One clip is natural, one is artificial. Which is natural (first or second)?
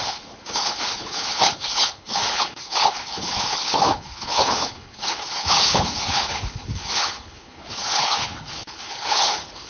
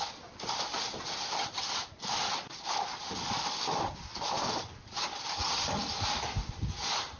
second